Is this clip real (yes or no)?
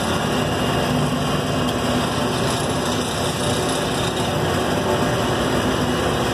yes